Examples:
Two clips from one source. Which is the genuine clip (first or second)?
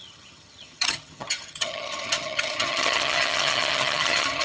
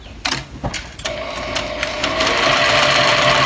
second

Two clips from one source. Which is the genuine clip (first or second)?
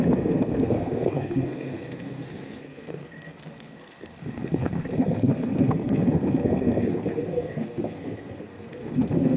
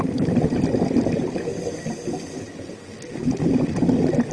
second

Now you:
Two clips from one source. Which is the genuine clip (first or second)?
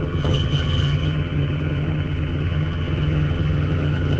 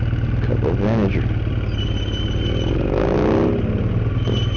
second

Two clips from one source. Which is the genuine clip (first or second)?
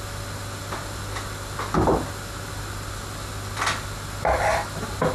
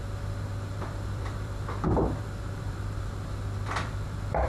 first